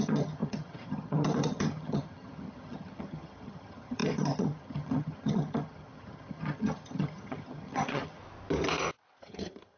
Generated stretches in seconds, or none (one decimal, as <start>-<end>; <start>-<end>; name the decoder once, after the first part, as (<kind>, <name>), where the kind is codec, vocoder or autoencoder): 0.0-8.2 (vocoder, HiFi-GAN); 9.2-9.8